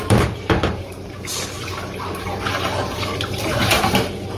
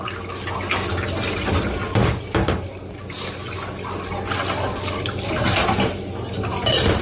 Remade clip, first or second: first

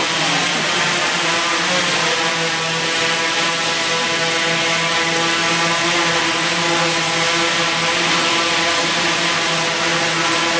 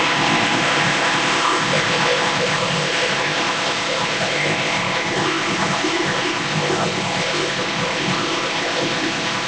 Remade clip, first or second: second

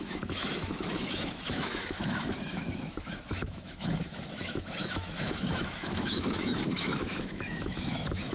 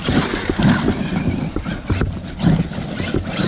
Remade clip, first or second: first